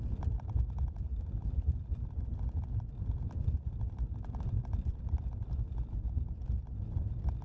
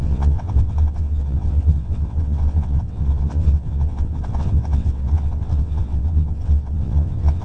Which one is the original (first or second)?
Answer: first